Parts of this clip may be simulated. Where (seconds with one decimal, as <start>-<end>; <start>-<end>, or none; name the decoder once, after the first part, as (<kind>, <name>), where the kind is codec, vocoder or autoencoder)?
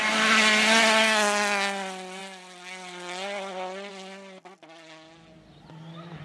none